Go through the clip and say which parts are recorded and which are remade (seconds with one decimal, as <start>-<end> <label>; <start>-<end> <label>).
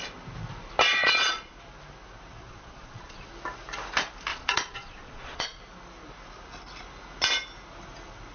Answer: 0.0-0.9 recorded; 0.9-1.5 remade; 1.5-2.3 recorded; 2.3-3.3 remade; 3.3-4.3 recorded; 4.3-5.6 remade; 5.6-8.3 recorded